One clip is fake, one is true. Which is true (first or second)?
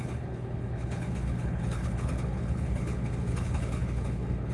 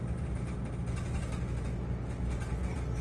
second